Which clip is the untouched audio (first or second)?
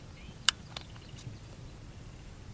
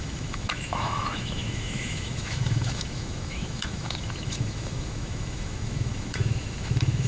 first